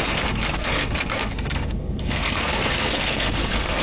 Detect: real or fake fake